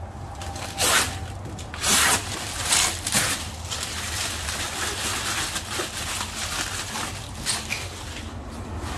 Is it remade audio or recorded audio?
recorded